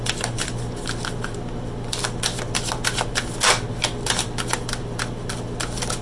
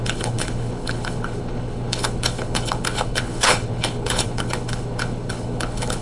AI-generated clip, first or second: second